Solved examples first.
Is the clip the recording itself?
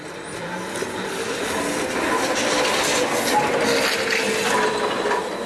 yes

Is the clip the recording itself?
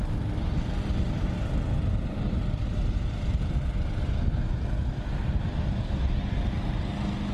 yes